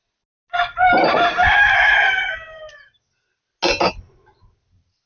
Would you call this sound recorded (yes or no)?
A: yes